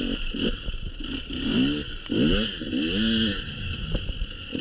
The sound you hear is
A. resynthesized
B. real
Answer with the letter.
B